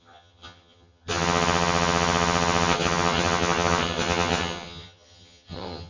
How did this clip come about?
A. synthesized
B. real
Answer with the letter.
A